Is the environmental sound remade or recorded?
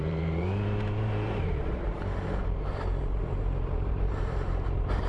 remade